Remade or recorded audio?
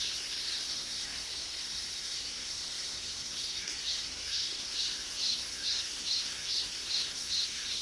remade